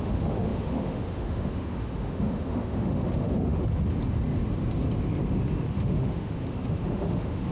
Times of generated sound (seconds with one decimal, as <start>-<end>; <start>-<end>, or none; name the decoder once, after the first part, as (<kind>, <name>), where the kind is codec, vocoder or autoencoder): 0.0-3.6 (autoencoder, DAC-VAE); 5.8-7.5